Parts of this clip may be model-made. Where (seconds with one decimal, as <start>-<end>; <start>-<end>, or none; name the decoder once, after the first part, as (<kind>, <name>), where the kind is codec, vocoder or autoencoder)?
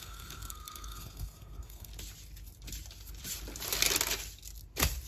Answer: 0.0-1.9 (codec, SNAC)